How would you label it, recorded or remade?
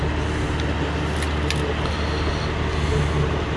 recorded